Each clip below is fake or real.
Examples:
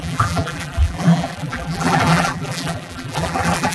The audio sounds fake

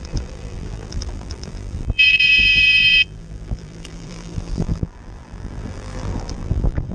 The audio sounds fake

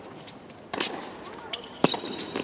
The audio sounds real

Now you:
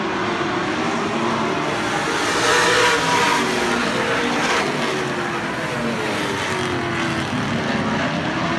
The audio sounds real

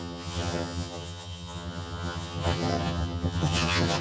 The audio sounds fake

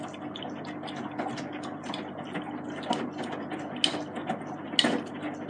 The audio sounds real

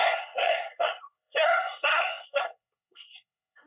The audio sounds fake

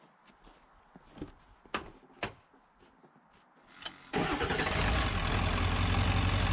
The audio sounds real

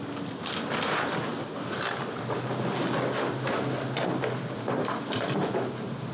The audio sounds real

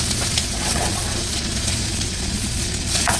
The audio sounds fake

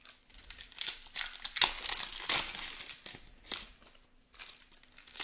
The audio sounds real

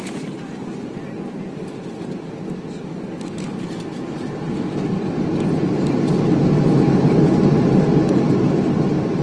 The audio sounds real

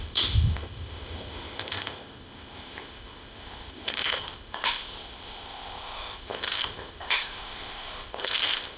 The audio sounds fake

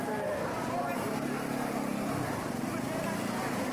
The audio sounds real